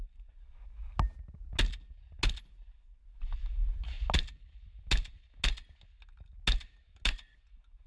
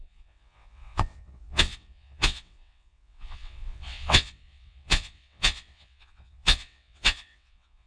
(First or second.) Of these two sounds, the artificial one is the second